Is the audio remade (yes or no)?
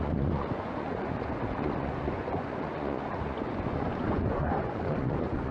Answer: yes